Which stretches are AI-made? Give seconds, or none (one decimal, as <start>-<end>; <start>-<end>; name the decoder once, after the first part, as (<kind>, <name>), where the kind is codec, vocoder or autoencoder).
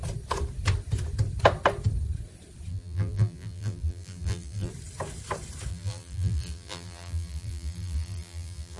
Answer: 2.7-4.7 (vocoder, BigVGAN v2); 5.7-8.8